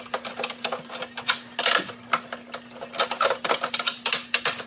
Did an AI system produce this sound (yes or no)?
no